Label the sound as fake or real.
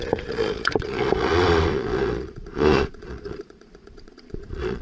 fake